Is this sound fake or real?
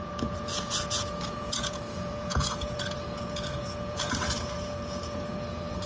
fake